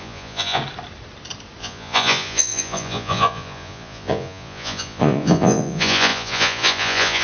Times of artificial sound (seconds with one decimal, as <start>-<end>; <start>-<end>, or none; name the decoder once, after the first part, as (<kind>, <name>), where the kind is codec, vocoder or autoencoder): 0.0-0.6 (vocoder, Vocos); 1.6-7.2